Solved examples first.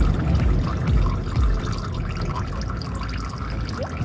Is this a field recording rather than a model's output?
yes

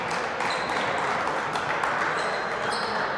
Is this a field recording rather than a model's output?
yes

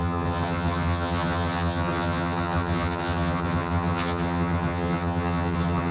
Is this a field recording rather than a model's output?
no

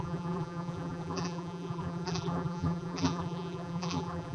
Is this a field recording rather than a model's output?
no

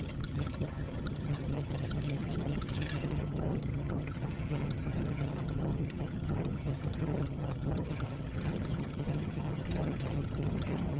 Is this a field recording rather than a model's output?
no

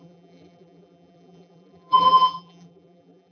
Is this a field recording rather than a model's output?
no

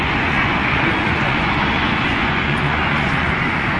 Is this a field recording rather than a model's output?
no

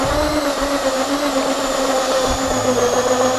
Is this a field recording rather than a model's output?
yes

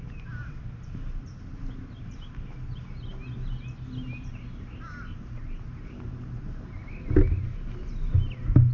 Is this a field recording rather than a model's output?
yes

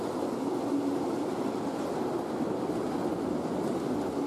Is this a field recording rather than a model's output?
yes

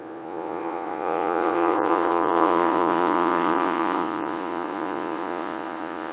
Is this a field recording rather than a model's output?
no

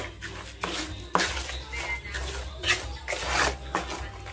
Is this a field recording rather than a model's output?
yes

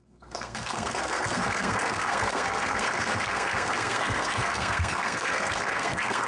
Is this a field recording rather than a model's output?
no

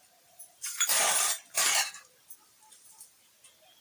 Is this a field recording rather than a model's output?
no